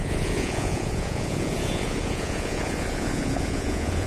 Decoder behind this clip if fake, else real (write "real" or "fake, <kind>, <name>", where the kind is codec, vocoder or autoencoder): fake, vocoder, Vocos